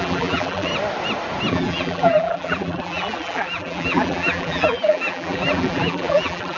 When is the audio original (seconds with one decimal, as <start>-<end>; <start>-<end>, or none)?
0.7-1.5